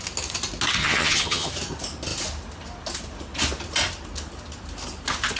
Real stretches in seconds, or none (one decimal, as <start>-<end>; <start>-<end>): 0.0-0.8; 1.5-5.4